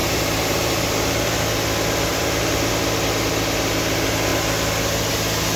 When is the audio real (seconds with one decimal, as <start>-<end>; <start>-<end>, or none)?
1.4-2.1; 2.7-5.6